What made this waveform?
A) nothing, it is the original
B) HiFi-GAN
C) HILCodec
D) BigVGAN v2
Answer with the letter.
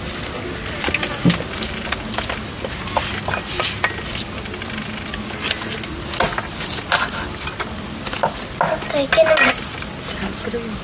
A